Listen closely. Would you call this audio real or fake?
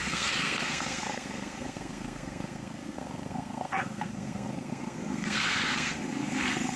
fake